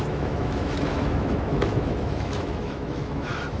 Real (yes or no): no